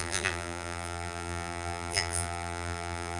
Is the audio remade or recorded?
remade